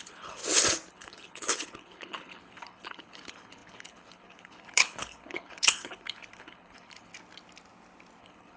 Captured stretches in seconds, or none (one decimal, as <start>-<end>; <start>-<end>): 0.4-0.9; 7.1-8.2